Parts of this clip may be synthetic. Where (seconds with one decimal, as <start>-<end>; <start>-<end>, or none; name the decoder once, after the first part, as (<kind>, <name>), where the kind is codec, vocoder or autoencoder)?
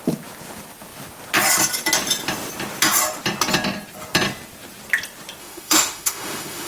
5.4-6.7 (autoencoder, DAC-VAE)